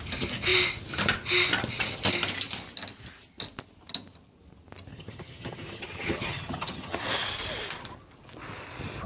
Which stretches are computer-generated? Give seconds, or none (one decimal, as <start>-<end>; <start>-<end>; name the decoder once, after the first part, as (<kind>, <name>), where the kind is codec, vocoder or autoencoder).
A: 4.9-7.0 (vocoder, HiFi-GAN)